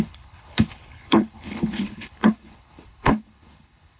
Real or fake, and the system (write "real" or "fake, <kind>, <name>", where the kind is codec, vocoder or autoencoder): fake, codec, HILCodec